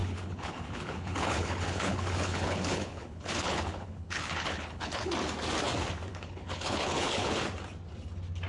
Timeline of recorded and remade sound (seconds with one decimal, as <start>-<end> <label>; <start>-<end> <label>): 0.0-5.1 remade; 5.1-6.1 recorded; 6.1-7.4 remade; 7.4-8.5 recorded